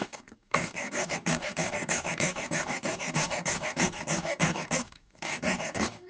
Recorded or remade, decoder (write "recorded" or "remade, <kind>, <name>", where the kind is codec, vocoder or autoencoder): remade, codec, DAC